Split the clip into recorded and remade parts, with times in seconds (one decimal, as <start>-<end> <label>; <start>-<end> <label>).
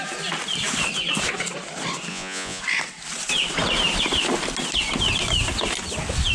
0.0-2.1 recorded; 2.1-2.6 remade; 2.6-6.3 recorded